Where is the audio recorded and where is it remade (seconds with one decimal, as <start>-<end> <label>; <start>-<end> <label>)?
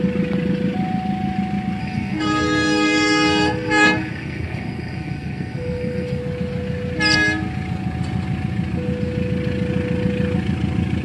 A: 0.0-1.8 recorded; 1.8-6.2 remade; 6.2-11.0 recorded